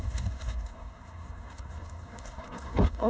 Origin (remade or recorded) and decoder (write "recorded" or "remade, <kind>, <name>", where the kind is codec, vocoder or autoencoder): remade, codec, SNAC